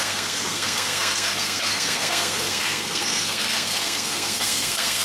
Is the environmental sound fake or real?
fake